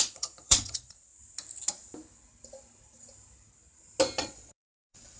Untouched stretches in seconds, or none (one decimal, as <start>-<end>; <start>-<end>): 1.1-4.2